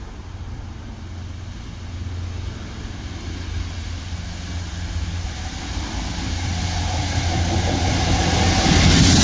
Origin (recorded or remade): recorded